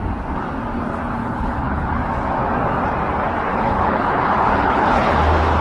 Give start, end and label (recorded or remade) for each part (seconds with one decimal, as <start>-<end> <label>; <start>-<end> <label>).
0.0-1.2 recorded; 1.2-2.0 remade; 2.0-3.5 recorded; 3.5-5.1 remade; 5.1-5.6 recorded